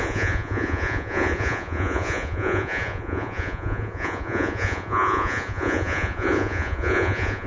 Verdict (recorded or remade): remade